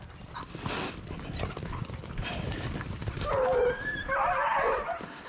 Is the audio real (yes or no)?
yes